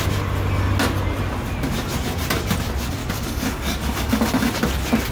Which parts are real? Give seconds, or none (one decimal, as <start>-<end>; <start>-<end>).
0.0-3.0; 4.5-5.1